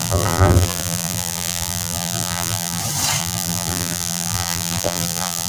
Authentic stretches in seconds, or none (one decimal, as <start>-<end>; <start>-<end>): 2.8-3.2